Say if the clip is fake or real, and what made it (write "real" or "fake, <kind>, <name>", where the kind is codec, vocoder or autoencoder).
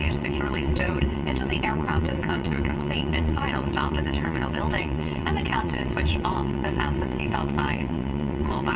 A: fake, vocoder, WaveNeXt